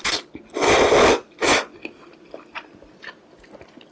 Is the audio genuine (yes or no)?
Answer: yes